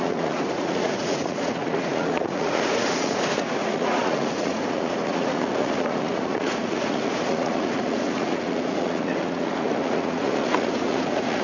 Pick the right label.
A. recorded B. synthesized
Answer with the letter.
B